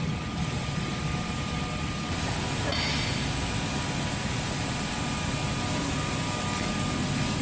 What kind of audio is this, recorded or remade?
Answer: recorded